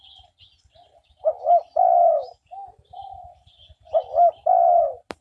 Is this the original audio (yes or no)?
yes